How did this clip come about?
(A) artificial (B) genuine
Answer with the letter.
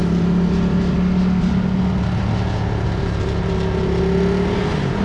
B